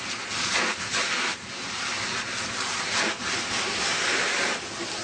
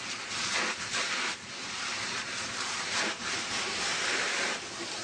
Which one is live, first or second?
first